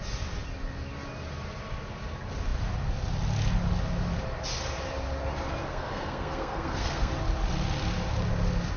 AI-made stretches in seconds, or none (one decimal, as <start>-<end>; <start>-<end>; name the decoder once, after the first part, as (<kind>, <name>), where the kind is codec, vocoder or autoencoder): 5.7-7.1 (codec, SNAC)